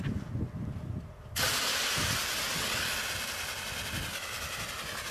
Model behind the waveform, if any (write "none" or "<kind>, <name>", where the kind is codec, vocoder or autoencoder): none